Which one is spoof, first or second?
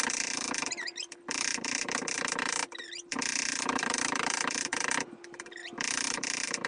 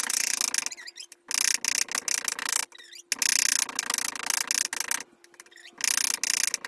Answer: first